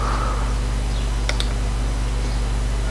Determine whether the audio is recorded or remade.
recorded